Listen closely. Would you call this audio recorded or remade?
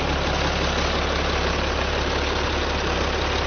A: recorded